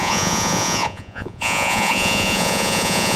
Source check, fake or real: fake